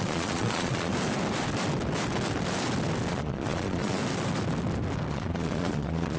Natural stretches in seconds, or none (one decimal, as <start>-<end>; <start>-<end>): 0.9-3.1; 4.0-5.1